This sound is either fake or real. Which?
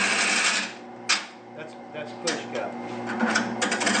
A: real